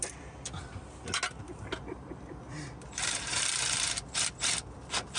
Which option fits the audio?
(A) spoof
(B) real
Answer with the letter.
B